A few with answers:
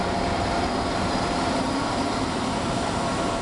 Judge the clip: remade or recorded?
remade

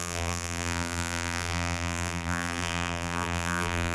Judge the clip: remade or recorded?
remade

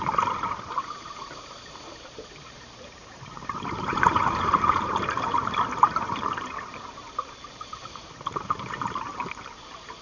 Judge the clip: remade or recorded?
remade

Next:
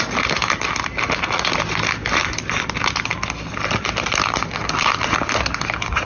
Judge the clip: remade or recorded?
recorded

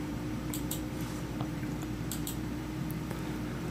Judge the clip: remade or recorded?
remade